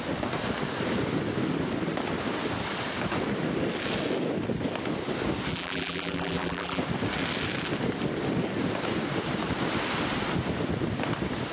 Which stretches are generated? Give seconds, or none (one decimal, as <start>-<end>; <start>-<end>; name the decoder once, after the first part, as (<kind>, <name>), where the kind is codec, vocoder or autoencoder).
5.5-6.8 (vocoder, BigVGAN v2)